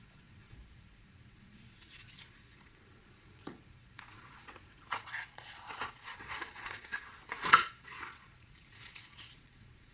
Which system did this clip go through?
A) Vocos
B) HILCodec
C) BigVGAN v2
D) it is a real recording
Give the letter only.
A